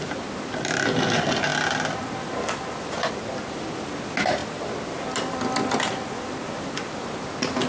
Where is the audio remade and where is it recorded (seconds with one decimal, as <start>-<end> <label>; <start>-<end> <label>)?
0.0-7.7 recorded